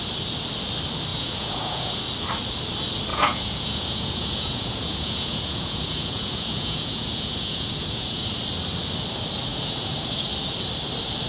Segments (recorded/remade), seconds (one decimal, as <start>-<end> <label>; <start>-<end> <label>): 0.0-1.1 recorded; 1.1-2.0 remade; 2.0-3.1 recorded; 3.1-8.3 remade; 8.3-9.5 recorded; 9.5-10.3 remade; 10.3-11.3 recorded